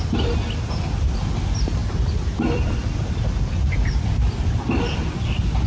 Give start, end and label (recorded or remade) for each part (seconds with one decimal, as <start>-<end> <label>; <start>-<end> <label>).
0.0-1.8 recorded; 1.8-4.8 remade; 4.8-5.7 recorded